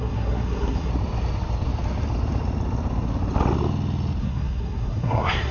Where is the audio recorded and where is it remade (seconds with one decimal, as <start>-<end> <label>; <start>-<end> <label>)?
0.0-0.9 remade; 0.9-4.2 recorded; 4.2-5.5 remade